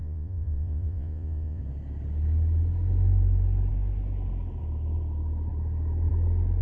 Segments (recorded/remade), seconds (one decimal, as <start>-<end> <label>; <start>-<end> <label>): 0.0-1.6 remade; 1.6-6.6 recorded